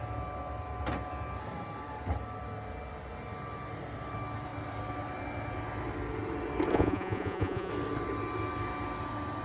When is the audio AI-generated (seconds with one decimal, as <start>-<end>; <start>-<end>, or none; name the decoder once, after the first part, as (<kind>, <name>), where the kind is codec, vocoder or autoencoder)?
6.7-7.7 (vocoder, Vocos)